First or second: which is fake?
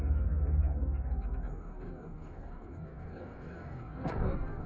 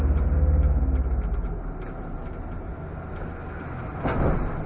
first